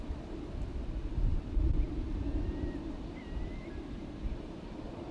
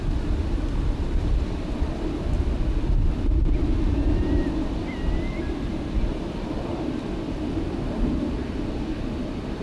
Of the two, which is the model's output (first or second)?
first